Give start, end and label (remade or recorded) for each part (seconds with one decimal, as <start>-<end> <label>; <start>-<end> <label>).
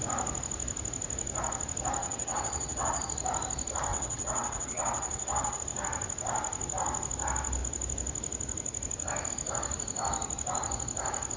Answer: 0.0-2.0 recorded; 2.0-3.0 remade; 3.0-3.9 recorded; 3.9-5.6 remade; 5.6-11.4 recorded